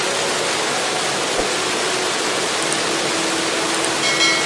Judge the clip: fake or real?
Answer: real